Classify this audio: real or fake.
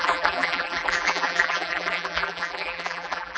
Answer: fake